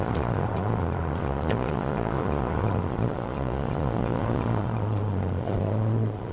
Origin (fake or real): fake